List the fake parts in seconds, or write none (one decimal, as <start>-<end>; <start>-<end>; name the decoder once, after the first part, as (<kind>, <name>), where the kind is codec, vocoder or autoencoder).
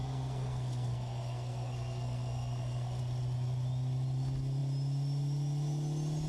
0.0-3.0 (codec, SNAC)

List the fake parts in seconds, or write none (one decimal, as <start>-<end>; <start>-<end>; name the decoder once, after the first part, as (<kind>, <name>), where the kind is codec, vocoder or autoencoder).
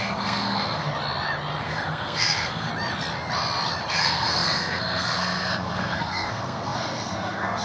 0.0-0.9 (codec, SNAC); 1.6-2.7; 3.9-7.6